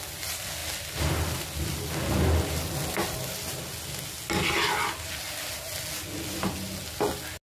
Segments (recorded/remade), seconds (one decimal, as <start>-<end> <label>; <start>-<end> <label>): 0.0-7.5 recorded